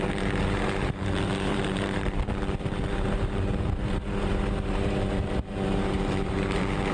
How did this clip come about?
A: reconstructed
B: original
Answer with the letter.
A